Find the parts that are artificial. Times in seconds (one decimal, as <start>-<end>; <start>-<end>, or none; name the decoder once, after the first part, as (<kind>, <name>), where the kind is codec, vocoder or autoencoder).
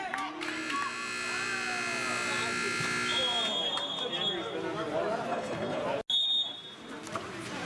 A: 5.3-5.8 (codec, HILCodec)